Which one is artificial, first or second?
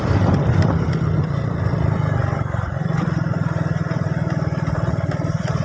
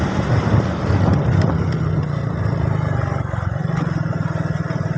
first